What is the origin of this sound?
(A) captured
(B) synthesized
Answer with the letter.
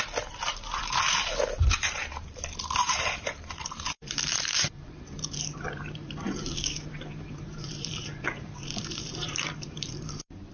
B